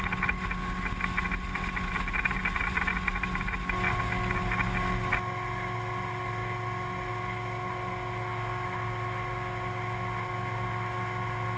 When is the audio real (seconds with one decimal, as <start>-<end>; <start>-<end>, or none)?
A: 0.0-11.6